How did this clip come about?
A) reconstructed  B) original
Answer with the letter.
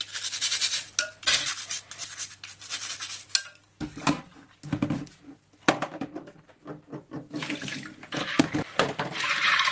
B